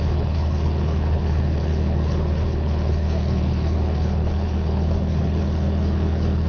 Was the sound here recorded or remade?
remade